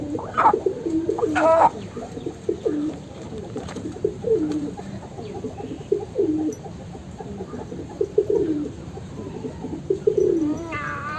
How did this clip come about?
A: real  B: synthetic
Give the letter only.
B